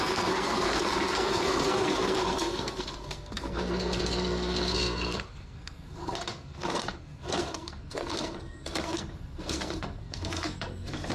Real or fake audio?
fake